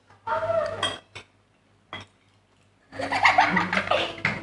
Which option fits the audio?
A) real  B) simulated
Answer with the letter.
A